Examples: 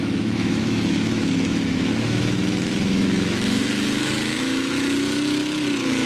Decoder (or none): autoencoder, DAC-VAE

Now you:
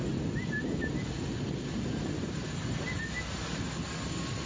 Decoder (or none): none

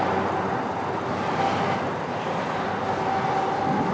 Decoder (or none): none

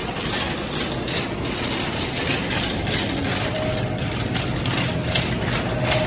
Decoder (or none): none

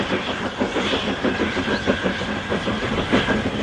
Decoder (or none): none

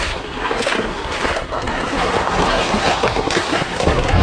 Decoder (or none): codec, SNAC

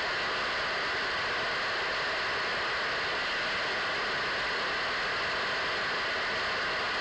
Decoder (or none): none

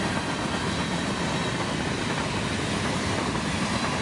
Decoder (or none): none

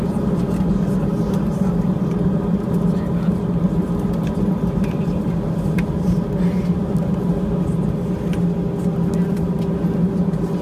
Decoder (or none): none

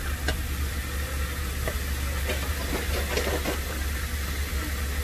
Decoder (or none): none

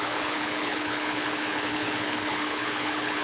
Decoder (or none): codec, HILCodec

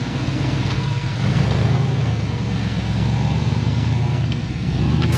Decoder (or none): codec, SNAC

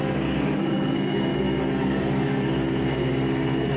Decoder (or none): codec, SNAC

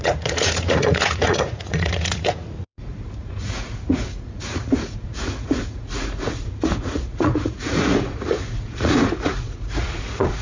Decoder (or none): vocoder, Vocos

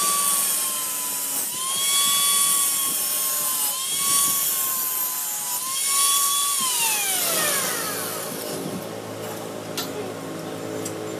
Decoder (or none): none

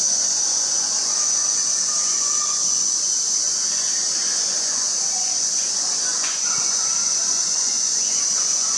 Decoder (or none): vocoder, Vocos